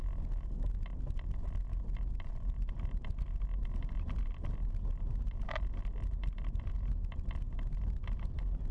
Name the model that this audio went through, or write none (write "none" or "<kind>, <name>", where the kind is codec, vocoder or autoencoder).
none